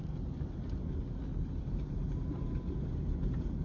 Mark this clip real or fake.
real